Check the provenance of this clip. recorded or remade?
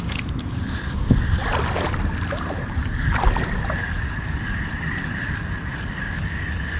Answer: recorded